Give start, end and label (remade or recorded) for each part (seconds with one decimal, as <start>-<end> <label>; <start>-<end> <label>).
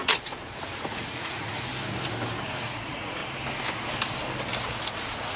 0.0-1.7 remade; 1.7-2.4 recorded; 2.4-3.2 remade; 3.2-5.0 recorded; 5.0-5.4 remade